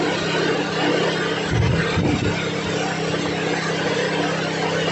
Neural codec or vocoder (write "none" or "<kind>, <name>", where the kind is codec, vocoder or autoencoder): none